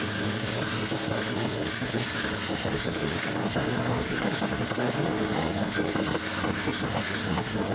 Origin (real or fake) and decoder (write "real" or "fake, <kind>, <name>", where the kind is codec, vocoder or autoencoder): fake, codec, SNAC